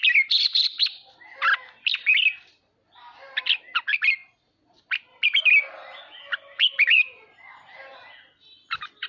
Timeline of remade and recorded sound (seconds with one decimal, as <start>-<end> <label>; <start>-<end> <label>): 0.0-9.1 recorded

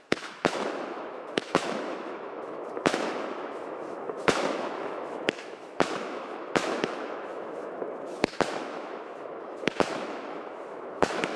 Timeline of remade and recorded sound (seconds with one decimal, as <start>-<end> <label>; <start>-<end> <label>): 0.0-11.4 remade

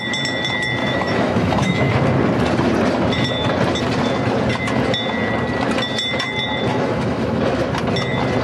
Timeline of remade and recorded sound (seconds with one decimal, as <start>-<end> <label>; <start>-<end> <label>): 0.0-0.8 recorded; 0.8-1.9 remade; 1.9-6.7 recorded; 6.7-7.6 remade; 7.6-8.4 recorded